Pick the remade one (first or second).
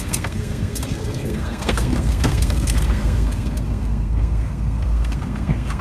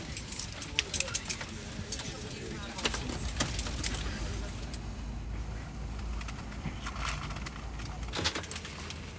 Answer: first